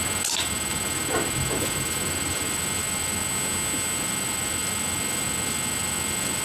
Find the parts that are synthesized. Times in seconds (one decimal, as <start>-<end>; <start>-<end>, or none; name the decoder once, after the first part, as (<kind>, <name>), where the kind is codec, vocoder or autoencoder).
none